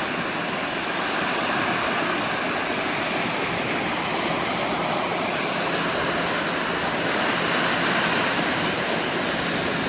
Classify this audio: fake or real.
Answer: real